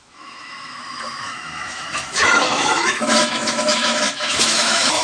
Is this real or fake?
fake